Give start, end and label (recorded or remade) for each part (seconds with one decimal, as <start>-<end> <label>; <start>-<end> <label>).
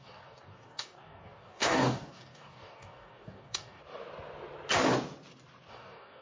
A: 0.0-3.8 remade; 3.8-5.7 recorded; 5.7-6.2 remade